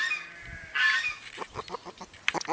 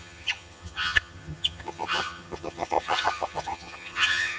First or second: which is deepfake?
second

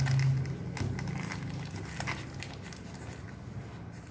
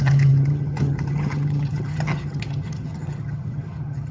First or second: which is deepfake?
second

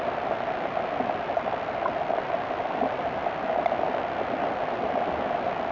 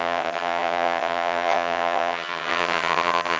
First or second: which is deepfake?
second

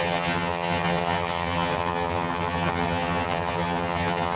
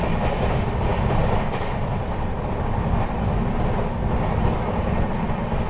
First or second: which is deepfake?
first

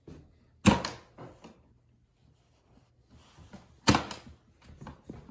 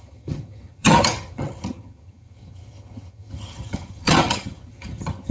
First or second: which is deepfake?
second